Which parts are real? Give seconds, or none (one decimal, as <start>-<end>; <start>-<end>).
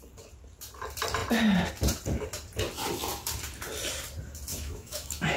0.0-4.5